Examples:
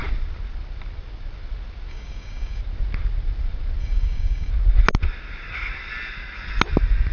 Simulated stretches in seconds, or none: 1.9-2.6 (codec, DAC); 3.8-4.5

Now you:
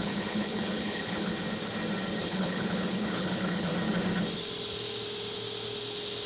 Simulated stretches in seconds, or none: 0.0-1.3 (codec, HILCodec); 2.2-3.7